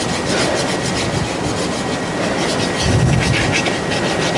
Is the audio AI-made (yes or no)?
no